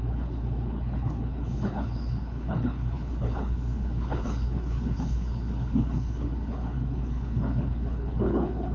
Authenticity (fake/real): fake